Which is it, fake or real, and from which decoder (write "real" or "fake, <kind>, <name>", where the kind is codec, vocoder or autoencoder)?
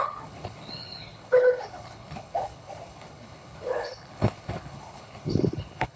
fake, codec, HILCodec